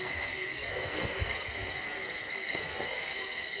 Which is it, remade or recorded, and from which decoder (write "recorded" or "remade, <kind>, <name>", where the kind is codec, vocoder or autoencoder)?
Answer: remade, codec, SNAC